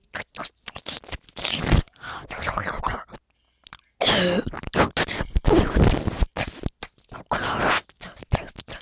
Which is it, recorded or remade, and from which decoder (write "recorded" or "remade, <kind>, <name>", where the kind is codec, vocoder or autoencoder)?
recorded